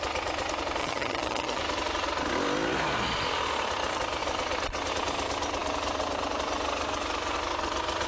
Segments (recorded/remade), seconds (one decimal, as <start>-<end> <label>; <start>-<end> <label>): 0.0-0.8 recorded; 0.8-1.6 remade; 1.6-8.1 recorded